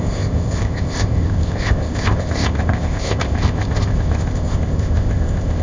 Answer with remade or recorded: remade